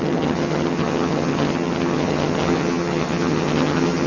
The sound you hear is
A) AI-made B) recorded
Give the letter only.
A